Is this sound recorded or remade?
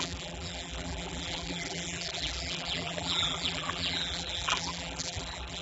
remade